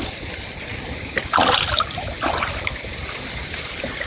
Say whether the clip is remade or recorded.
recorded